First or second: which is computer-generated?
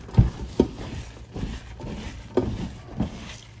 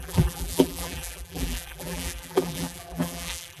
second